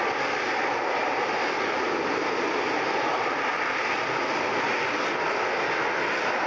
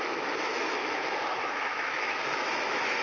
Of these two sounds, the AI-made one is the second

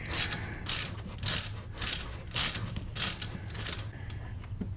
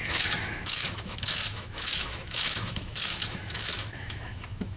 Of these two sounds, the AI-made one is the second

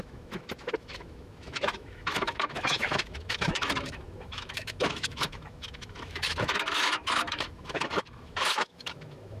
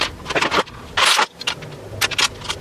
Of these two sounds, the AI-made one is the first